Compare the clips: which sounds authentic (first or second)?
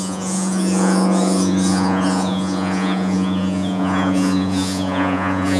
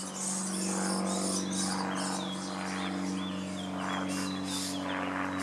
second